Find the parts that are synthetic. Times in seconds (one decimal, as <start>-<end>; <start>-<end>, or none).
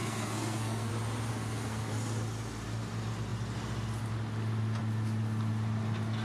0.0-0.9; 1.3-1.9